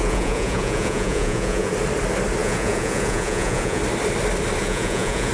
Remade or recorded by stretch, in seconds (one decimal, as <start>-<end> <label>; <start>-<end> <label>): 0.0-1.7 remade; 1.7-2.4 recorded; 2.4-3.8 remade; 3.8-4.6 recorded; 4.6-5.3 remade

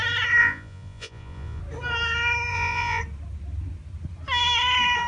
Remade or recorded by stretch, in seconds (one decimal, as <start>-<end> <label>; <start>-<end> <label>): 0.0-0.4 recorded; 0.4-1.6 remade; 1.6-2.5 recorded; 2.5-3.0 remade; 3.0-5.1 recorded